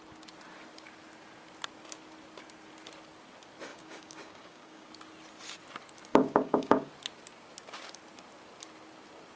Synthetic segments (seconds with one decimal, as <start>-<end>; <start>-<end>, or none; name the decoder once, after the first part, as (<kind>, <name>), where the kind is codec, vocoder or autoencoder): 3.7-4.9 (codec, DAC); 6.1-6.9